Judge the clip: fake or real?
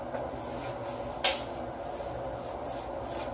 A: real